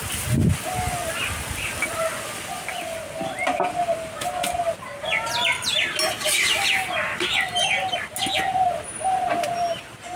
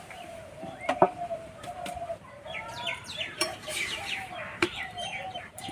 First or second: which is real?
first